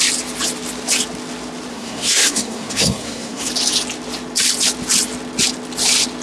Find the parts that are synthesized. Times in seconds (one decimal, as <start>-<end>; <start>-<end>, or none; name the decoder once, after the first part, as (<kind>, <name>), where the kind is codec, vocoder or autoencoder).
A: 1.7-3.5 (codec, SNAC)